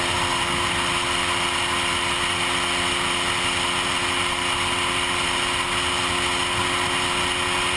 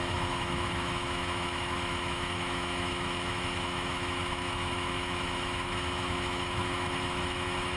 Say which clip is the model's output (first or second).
second